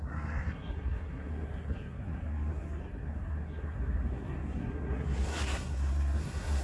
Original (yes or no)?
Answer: no